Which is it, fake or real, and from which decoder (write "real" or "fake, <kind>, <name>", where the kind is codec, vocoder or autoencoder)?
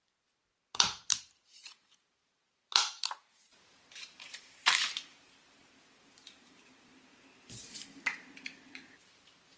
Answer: fake, vocoder, BigVGAN v2